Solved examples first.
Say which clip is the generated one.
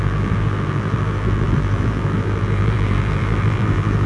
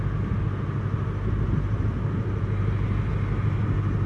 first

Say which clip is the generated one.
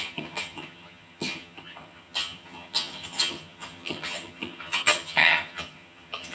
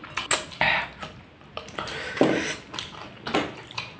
first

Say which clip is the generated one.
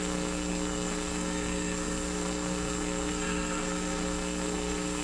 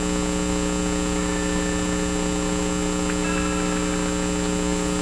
first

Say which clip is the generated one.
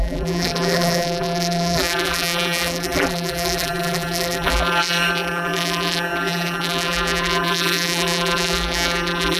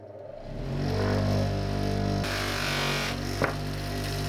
first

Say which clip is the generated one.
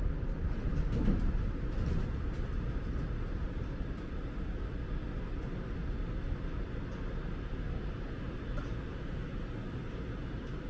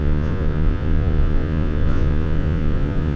second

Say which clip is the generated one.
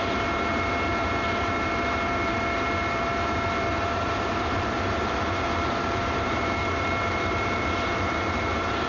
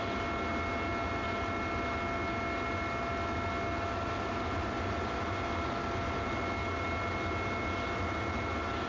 first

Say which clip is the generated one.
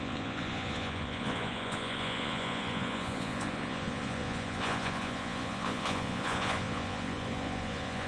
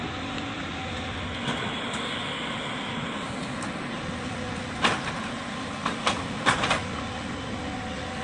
first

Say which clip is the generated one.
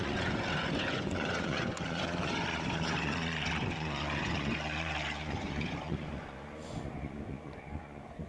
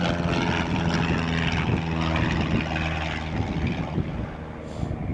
first